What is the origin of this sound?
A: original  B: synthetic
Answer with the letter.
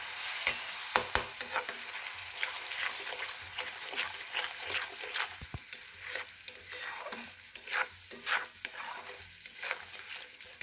A